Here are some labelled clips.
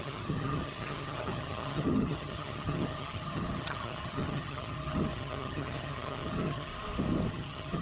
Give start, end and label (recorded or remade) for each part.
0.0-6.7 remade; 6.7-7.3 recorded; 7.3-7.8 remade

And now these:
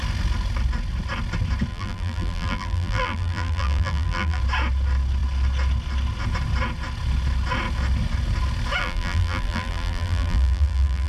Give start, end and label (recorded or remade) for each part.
0.0-1.7 recorded; 1.7-4.4 remade; 4.4-8.8 recorded; 8.8-11.1 remade

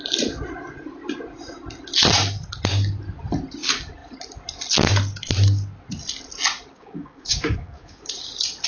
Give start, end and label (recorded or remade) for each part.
0.0-6.7 recorded; 6.7-8.0 remade; 8.0-8.7 recorded

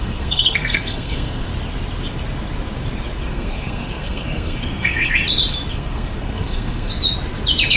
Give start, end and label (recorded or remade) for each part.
0.0-1.5 remade; 1.5-3.2 recorded; 3.2-5.2 remade; 5.2-5.7 recorded; 5.7-6.9 remade; 6.9-7.8 recorded

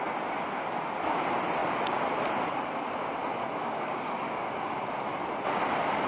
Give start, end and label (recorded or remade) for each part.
0.0-3.6 recorded; 3.6-4.5 remade; 4.5-6.1 recorded

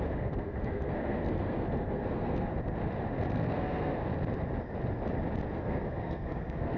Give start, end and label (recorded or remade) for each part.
0.0-2.5 remade; 2.5-3.3 recorded; 3.3-4.0 remade; 4.0-5.5 recorded; 5.5-6.8 remade

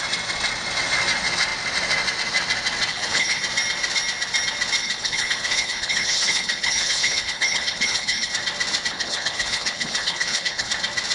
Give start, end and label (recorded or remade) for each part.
0.0-2.9 recorded; 2.9-3.4 remade; 3.4-4.8 recorded; 4.8-8.3 remade; 8.3-8.9 recorded; 8.9-10.7 remade; 10.7-11.1 recorded

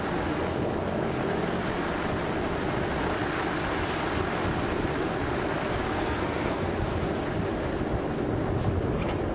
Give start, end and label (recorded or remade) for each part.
0.0-5.8 recorded; 5.8-6.7 remade; 6.7-9.3 recorded